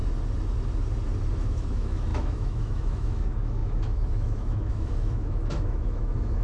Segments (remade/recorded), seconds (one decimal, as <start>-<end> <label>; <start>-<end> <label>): 0.0-1.3 recorded; 1.3-6.4 remade